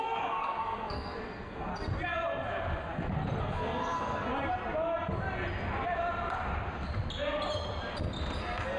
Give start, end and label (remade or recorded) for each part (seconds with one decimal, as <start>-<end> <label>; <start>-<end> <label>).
0.0-1.7 remade; 1.7-3.4 recorded; 3.4-4.3 remade; 4.3-8.4 recorded; 8.4-8.8 remade